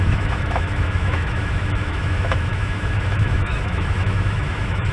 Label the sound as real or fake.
fake